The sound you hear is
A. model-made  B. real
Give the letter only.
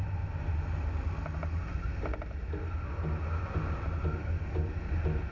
B